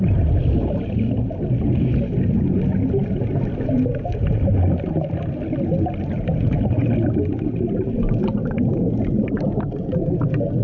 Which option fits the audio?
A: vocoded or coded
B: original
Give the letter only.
B